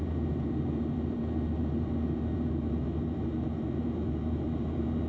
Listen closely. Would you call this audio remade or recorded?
remade